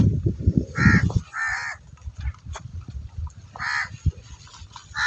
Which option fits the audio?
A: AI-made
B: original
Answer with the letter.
B